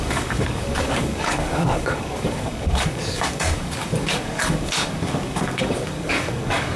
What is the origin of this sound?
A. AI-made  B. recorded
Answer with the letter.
A